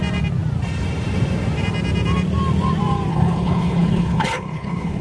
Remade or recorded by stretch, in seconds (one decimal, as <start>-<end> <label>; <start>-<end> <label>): 0.0-3.1 recorded; 3.1-5.0 remade